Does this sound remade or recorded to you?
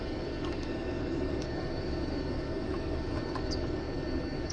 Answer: remade